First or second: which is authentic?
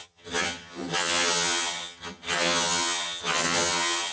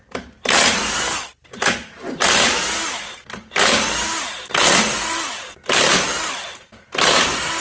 second